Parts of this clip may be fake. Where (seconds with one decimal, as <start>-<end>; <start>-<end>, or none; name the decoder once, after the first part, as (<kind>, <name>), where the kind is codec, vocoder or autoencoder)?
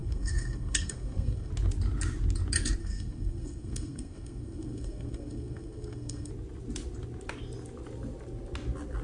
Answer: 0.0-1.5 (codec, SNAC); 2.8-6.3